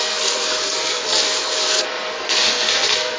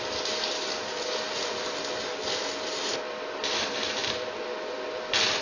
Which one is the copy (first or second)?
first